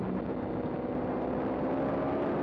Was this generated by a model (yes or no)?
no